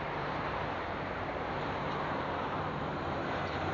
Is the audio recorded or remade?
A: remade